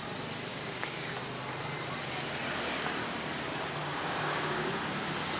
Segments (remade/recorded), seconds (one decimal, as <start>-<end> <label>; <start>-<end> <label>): 0.0-0.5 recorded; 0.5-1.1 remade; 1.1-3.8 recorded; 3.8-4.7 remade; 4.7-5.4 recorded